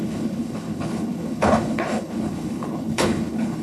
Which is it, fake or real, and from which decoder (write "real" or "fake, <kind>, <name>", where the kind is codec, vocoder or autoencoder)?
fake, codec, HILCodec